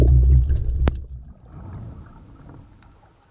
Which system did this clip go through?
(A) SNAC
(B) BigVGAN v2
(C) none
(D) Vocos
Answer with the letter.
C